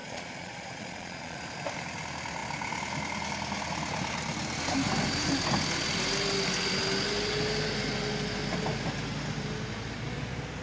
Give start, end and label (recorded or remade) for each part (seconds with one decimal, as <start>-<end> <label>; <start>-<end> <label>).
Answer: 0.0-1.4 remade; 1.4-10.6 recorded